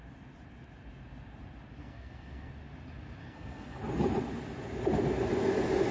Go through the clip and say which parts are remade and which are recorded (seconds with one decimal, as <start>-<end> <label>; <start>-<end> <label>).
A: 0.0-1.8 recorded; 1.8-2.5 remade; 2.5-3.2 recorded; 3.2-3.8 remade; 3.8-5.9 recorded